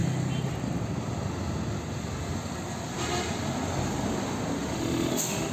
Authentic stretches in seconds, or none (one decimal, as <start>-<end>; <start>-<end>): 0.0-4.6